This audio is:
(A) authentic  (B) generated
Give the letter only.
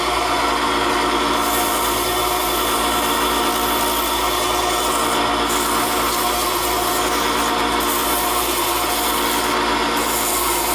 A